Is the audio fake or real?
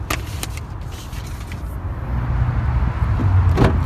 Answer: real